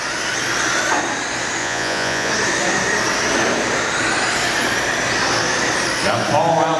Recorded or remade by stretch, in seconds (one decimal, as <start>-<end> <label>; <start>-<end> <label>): 0.0-1.6 recorded; 1.6-2.3 remade; 2.3-6.8 recorded